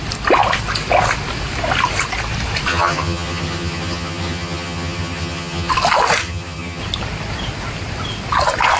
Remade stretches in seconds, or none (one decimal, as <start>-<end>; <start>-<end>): 2.7-5.7; 6.2-6.8